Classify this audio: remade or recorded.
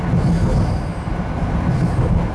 recorded